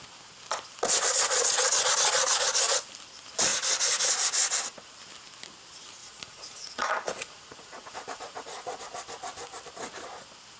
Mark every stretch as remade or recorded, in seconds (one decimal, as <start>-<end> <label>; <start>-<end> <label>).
0.0-6.0 recorded; 6.0-8.8 remade; 8.8-10.6 recorded

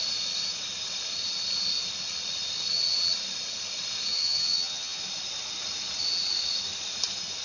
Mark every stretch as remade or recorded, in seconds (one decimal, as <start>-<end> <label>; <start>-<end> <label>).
0.0-4.1 recorded; 4.1-5.0 remade; 5.0-7.4 recorded

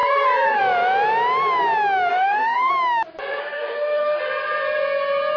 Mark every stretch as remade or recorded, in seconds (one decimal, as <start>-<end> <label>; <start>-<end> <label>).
0.0-0.6 remade; 0.6-2.1 recorded; 2.1-2.7 remade; 2.7-3.4 recorded; 3.4-4.2 remade; 4.2-5.4 recorded

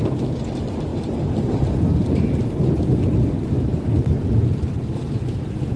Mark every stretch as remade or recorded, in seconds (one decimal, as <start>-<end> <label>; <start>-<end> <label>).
0.0-5.8 recorded